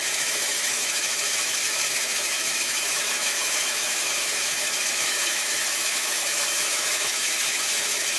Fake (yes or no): yes